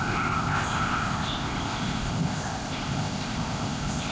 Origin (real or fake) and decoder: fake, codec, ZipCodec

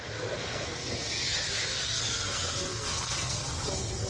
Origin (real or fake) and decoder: fake, codec, SNAC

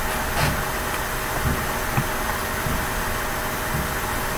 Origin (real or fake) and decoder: real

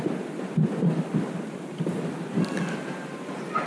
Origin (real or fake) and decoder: fake, vocoder, BigVGAN v2